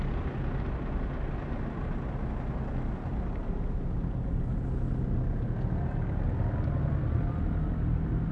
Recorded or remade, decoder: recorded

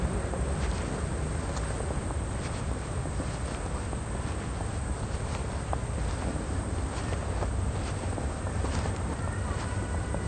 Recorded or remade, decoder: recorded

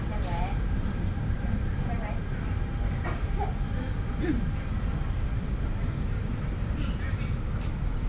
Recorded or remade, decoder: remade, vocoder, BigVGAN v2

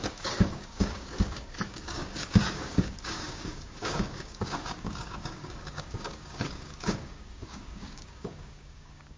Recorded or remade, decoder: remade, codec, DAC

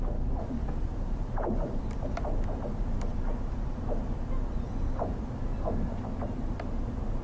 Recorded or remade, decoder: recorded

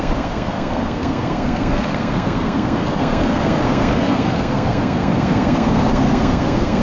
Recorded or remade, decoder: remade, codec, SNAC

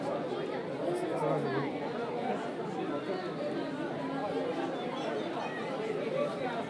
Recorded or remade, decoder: recorded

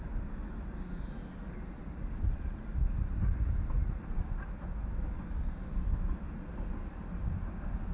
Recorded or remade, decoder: recorded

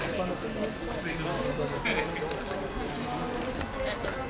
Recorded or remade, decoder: recorded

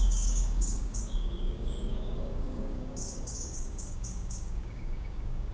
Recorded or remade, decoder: remade, codec, DAC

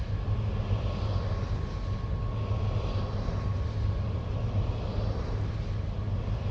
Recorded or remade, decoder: recorded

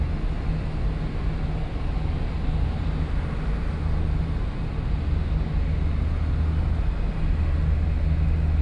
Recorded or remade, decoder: recorded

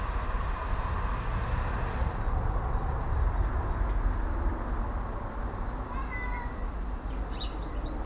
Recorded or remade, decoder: recorded